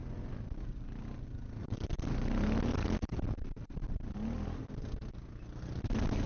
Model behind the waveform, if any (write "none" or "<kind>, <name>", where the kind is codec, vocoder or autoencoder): none